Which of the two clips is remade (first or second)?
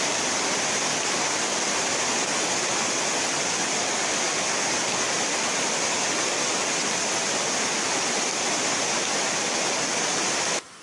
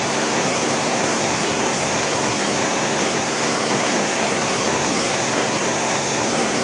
second